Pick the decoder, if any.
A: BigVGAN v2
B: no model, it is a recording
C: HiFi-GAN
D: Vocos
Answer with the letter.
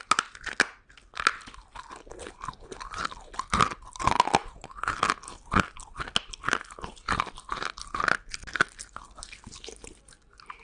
B